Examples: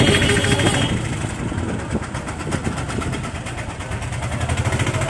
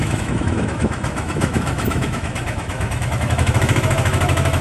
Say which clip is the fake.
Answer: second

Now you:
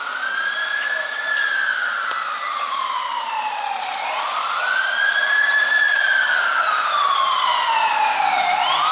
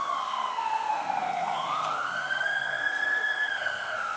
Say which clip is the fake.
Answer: second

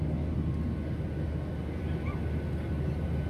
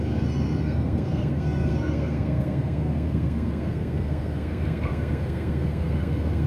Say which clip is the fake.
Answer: second